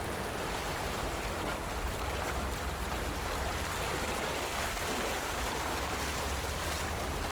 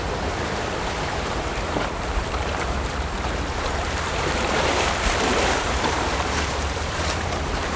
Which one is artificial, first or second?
second